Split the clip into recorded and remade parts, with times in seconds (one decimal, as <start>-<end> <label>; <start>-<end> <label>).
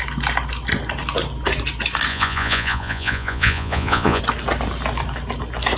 0.0-2.1 recorded; 2.1-4.2 remade; 4.2-5.8 recorded